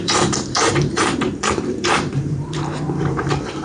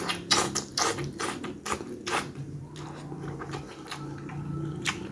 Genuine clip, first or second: second